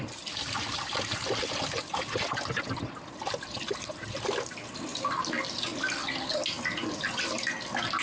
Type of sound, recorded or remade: recorded